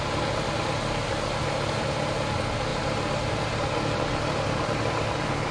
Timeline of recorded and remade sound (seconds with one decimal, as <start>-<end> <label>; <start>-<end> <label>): 0.0-5.5 recorded